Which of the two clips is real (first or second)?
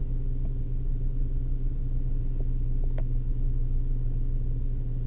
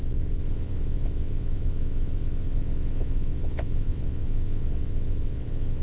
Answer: first